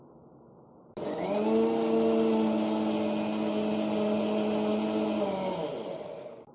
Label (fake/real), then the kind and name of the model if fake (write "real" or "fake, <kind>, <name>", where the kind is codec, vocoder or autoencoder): real